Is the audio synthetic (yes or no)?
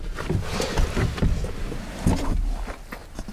no